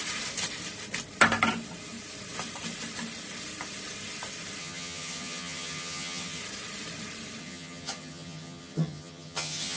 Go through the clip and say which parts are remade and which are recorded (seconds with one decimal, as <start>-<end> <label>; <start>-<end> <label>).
0.0-4.6 recorded; 4.6-6.4 remade; 6.4-7.4 recorded; 7.4-9.8 remade